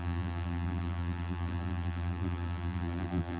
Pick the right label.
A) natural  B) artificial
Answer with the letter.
B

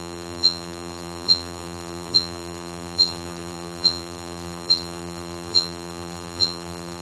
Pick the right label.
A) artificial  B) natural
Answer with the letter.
A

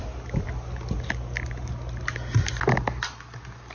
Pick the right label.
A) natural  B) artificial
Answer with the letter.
A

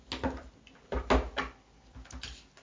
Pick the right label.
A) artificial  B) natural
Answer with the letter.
B